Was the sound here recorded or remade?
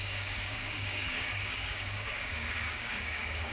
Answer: remade